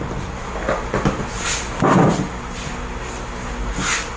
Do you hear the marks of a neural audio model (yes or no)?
no